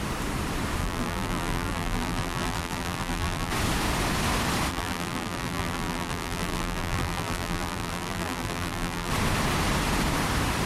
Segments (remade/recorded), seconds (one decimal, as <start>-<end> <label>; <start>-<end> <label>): 0.0-0.8 recorded; 0.8-3.5 remade; 3.5-4.7 recorded; 4.7-9.1 remade; 9.1-10.7 recorded